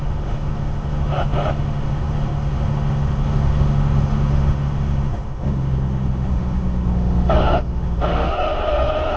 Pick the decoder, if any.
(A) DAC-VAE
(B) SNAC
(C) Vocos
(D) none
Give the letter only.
A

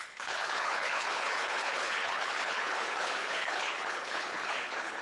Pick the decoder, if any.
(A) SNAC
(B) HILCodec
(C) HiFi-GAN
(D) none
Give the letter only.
B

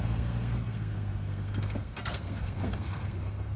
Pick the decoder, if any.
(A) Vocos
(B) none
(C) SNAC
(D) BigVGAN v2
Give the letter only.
C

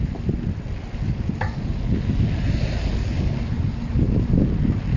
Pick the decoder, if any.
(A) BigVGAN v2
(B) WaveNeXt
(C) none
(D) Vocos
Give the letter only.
C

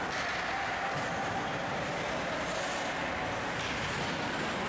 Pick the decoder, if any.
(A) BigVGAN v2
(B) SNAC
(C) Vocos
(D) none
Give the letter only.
D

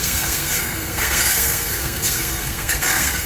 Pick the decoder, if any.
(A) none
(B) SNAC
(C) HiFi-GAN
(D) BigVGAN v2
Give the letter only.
B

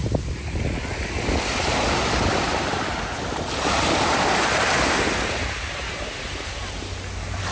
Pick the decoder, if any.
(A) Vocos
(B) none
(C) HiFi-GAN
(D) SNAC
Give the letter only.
B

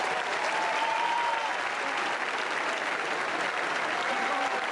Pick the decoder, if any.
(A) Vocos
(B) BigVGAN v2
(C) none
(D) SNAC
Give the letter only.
C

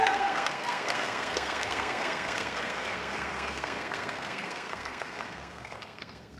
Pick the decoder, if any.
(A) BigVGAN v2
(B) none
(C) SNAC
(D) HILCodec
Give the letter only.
C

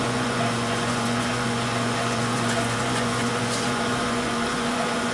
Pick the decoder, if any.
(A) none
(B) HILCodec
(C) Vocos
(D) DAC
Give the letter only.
C